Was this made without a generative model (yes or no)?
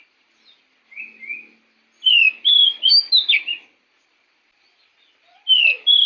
yes